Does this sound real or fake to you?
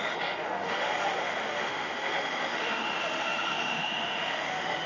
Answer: fake